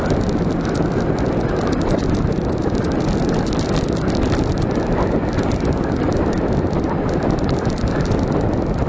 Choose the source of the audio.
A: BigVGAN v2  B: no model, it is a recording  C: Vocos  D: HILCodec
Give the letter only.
A